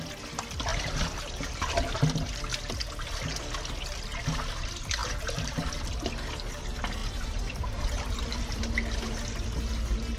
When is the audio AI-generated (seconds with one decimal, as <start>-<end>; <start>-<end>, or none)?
0.7-1.7; 5.0-5.6; 7.0-8.7